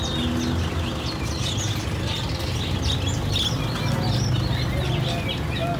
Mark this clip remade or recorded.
recorded